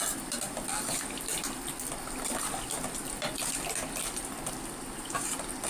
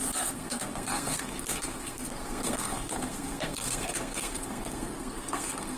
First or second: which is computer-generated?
second